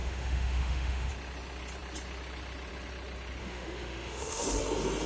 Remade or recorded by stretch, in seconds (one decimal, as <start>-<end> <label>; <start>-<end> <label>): 0.0-1.1 remade; 1.1-3.4 recorded; 3.4-4.6 remade; 4.6-5.1 recorded